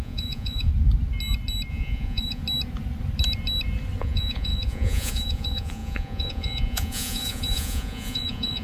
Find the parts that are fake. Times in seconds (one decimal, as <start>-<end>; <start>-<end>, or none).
0.0-0.7; 1.7-2.4; 4.0-8.6